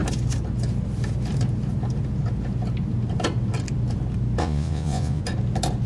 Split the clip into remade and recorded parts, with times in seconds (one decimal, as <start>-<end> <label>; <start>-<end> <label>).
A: 0.0-4.4 recorded; 4.4-5.2 remade; 5.2-5.9 recorded